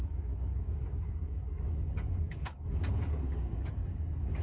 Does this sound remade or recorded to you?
remade